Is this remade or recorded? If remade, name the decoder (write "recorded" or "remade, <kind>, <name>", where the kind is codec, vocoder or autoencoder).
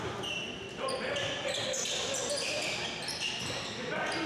recorded